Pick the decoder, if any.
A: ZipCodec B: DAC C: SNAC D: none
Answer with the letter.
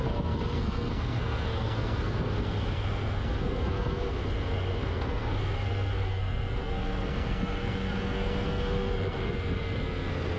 C